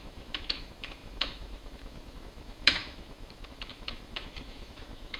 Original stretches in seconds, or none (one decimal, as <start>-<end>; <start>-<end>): none